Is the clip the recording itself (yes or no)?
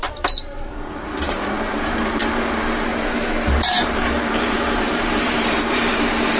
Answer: no